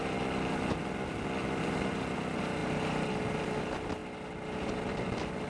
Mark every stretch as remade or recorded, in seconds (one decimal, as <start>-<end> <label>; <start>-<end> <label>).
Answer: 0.0-5.5 recorded